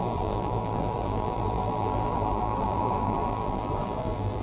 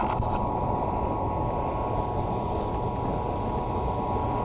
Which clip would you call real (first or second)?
second